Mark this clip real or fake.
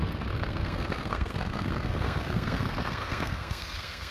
fake